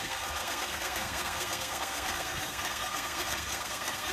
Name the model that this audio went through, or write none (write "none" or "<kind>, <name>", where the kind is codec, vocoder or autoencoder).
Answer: codec, SNAC